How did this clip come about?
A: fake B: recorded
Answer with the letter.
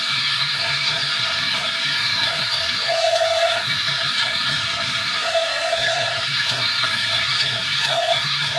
A